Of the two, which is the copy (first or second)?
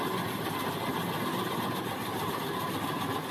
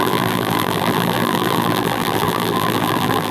second